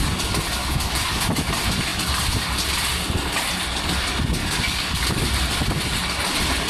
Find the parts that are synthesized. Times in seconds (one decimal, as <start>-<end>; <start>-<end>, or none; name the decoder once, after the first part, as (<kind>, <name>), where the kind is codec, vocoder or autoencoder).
0.6-1.2 (codec, DAC); 4.4-5.0